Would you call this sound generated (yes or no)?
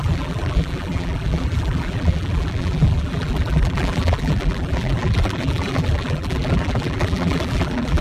yes